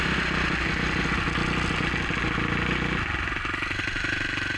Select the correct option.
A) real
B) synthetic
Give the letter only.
A